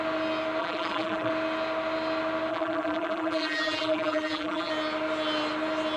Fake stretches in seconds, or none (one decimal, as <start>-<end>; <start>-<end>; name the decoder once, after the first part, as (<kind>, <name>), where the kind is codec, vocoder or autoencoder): 0.6-1.3 (vocoder, BigVGAN v2); 2.5-4.7